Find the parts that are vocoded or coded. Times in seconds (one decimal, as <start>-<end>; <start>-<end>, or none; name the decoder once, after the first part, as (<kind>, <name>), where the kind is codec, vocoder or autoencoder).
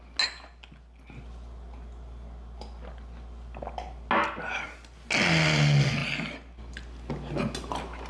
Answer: none